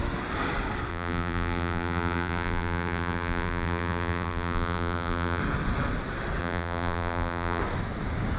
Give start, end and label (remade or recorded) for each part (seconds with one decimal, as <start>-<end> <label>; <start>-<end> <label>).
0.0-0.9 recorded; 0.9-5.4 remade; 5.4-6.4 recorded; 6.4-7.6 remade; 7.6-8.4 recorded